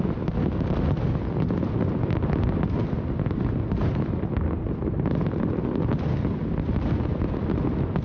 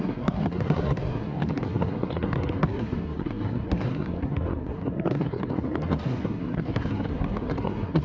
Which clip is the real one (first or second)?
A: first